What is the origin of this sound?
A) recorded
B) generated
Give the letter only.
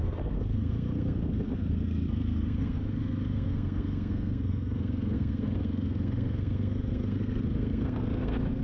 B